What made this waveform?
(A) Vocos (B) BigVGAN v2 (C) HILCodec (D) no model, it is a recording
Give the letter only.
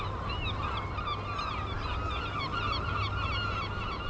D